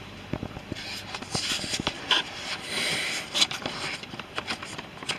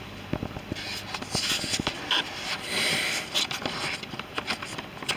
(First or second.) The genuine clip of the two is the second